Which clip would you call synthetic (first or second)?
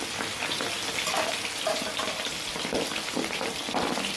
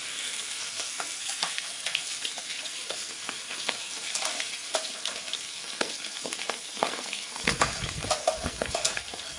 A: second